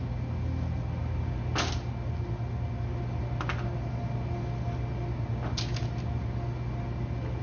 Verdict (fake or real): real